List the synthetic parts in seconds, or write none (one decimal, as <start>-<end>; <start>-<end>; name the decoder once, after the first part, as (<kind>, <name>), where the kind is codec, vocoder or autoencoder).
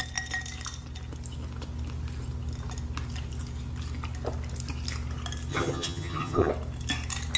5.5-6.5 (vocoder, HiFi-GAN)